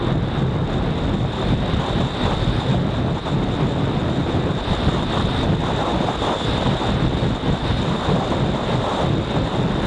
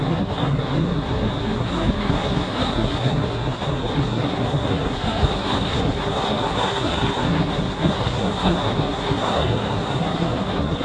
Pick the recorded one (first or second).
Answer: first